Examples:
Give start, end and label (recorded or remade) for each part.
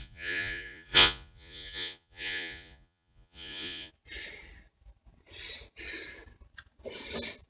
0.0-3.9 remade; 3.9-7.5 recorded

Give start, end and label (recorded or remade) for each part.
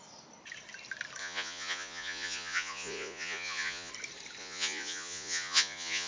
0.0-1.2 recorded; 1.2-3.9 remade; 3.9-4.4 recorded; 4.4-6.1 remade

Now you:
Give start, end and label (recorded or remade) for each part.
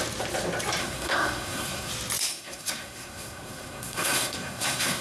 0.0-0.8 recorded; 0.8-1.9 remade; 1.9-2.3 recorded; 2.3-5.0 remade